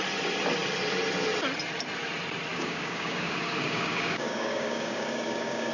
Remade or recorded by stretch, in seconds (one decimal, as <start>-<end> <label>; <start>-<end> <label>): 0.0-2.5 recorded; 2.5-5.7 remade